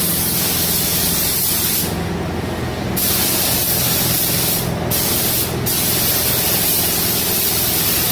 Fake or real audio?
real